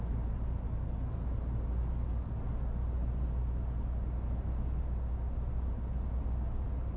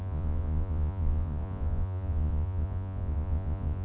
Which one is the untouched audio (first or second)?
first